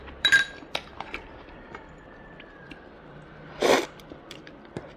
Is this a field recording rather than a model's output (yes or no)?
no